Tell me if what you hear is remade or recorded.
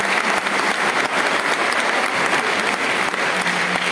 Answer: recorded